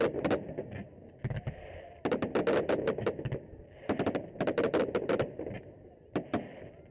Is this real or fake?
real